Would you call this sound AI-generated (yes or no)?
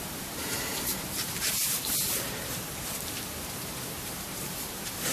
yes